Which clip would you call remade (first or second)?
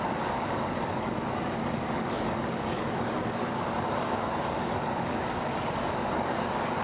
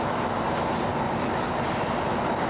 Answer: first